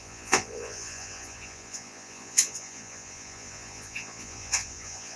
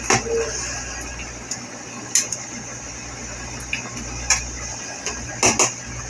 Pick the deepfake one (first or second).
first